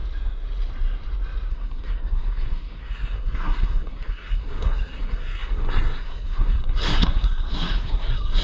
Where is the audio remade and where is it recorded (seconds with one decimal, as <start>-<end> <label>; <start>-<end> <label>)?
0.0-1.5 recorded; 1.5-8.4 remade